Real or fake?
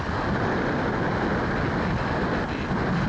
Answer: real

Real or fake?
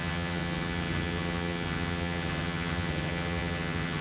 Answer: fake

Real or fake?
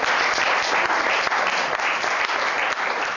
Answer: real